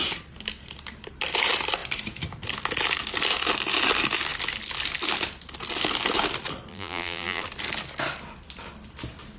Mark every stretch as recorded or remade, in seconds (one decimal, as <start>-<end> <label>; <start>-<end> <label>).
0.0-6.7 recorded; 6.7-7.4 remade; 7.4-9.4 recorded